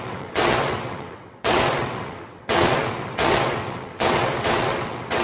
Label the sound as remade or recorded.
remade